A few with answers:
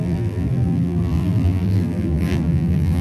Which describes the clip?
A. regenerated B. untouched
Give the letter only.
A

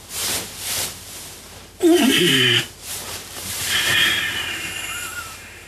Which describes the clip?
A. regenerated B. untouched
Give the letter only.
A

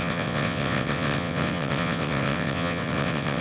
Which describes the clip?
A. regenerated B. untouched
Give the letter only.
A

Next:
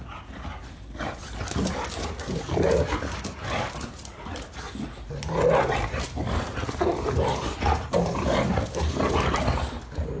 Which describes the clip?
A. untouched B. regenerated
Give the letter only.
A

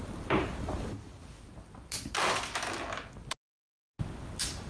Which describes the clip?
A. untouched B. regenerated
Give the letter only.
A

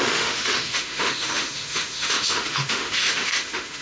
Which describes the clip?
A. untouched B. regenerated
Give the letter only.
B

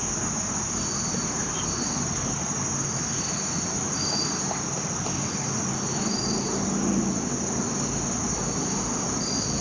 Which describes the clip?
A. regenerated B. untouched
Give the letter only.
B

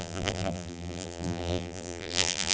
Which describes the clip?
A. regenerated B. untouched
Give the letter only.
A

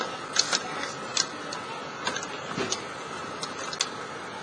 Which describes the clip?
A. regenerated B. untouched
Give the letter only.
B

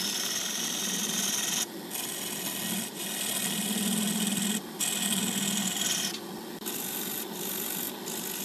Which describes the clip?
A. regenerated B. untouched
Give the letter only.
B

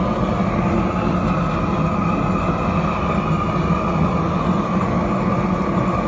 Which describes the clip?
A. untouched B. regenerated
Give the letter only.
A